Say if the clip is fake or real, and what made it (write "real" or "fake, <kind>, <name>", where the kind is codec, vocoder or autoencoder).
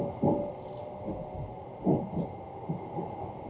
real